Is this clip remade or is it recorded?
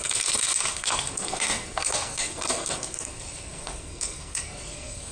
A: remade